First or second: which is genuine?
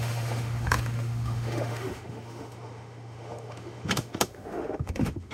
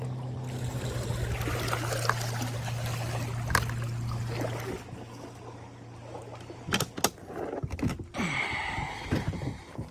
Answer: second